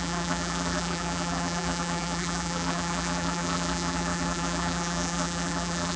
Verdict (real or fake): fake